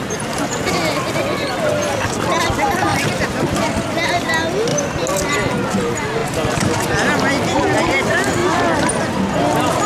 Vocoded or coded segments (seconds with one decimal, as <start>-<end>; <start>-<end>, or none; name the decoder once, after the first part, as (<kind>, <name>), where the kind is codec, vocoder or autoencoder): 2.9-3.9 (vocoder, BigVGAN v2)